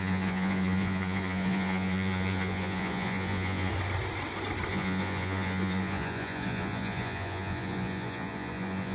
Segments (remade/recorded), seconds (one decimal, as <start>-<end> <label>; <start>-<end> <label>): 0.0-3.7 remade; 3.7-4.7 recorded; 4.7-8.9 remade